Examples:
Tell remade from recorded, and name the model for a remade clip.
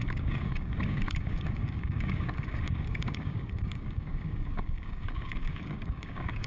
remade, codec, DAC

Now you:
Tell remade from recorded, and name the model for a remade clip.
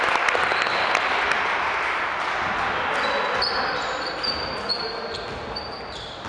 recorded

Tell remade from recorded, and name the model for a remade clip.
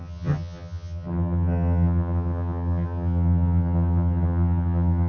remade, vocoder, HiFi-GAN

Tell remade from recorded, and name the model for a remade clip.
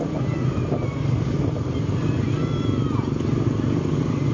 recorded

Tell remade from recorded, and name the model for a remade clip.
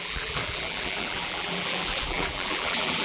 remade, vocoder, BigVGAN v2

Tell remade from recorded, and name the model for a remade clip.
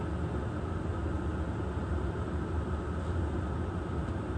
recorded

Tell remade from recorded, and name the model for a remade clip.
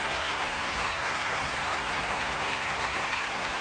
remade, codec, SNAC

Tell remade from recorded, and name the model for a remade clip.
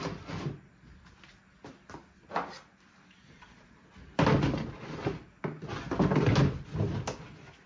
recorded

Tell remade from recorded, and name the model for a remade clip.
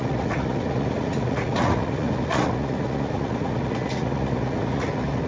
remade, vocoder, Vocos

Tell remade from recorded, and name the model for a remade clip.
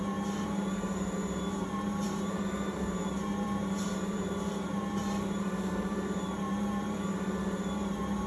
remade, vocoder, BigVGAN v2